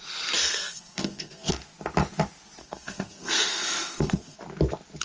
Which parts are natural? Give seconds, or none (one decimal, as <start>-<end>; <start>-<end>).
0.0-0.4; 1.5-2.6; 4.4-5.0

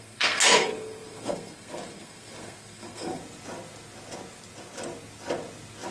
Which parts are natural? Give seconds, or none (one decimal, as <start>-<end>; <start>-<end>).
3.2-5.9

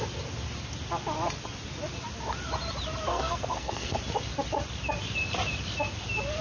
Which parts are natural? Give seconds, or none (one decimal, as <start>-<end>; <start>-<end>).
0.0-3.1; 4.0-6.4